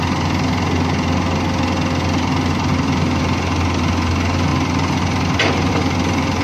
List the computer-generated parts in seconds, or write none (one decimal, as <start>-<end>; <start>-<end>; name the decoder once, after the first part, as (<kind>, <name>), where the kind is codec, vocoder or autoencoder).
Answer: 4.5-5.7 (vocoder, BigVGAN v2)